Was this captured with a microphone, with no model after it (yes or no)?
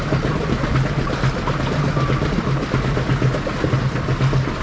yes